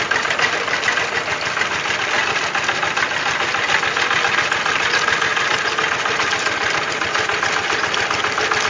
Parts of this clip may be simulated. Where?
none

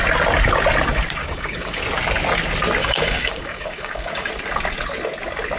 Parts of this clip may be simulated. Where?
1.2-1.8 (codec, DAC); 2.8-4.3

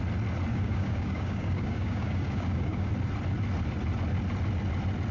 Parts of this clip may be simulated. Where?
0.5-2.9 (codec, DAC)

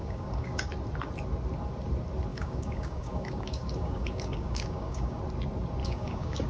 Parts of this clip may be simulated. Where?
0.0-0.7 (codec, DAC); 2.3-5.2; 5.8-6.5